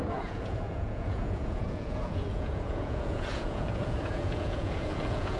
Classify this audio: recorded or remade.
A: remade